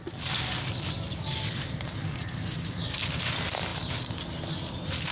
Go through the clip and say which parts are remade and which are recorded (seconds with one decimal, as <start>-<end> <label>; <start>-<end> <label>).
0.0-5.1 recorded